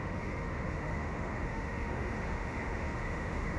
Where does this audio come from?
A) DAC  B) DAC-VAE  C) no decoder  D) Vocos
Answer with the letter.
B